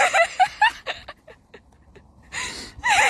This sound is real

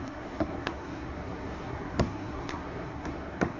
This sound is fake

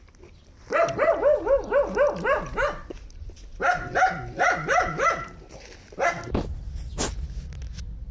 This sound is real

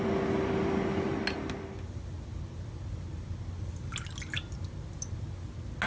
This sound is real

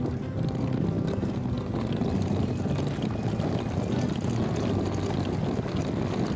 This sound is real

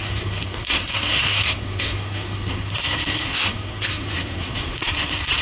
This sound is fake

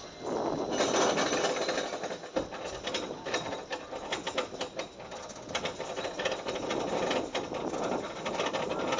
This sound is real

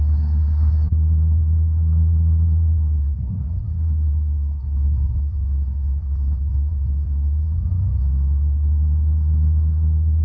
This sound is fake